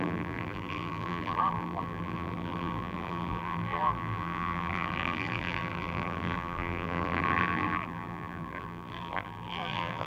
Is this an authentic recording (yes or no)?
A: no